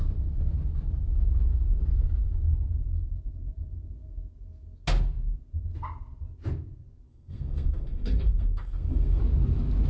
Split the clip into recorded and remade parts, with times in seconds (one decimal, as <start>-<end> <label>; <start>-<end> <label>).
0.0-7.1 recorded; 7.1-9.2 remade; 9.2-9.9 recorded